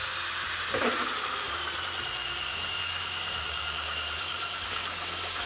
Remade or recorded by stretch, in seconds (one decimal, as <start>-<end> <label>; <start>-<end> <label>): 0.0-2.2 recorded; 2.2-5.5 remade